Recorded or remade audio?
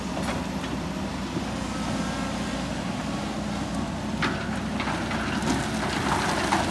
recorded